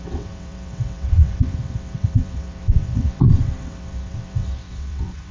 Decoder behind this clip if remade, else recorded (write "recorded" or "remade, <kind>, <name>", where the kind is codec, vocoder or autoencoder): remade, vocoder, WaveNeXt